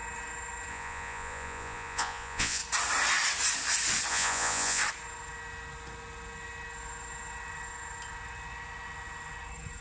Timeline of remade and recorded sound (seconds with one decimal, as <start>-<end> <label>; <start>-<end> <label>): 0.0-0.7 recorded; 0.7-2.6 remade; 2.6-4.1 recorded; 4.1-4.8 remade; 4.8-9.8 recorded